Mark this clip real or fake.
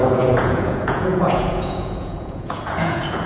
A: fake